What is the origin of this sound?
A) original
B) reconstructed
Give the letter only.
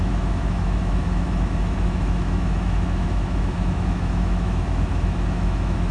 B